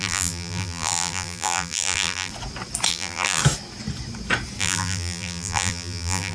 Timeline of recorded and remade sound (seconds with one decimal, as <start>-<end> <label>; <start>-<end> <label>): 0.0-2.3 remade; 2.3-2.9 recorded; 2.9-3.4 remade; 3.4-4.6 recorded; 4.6-6.3 remade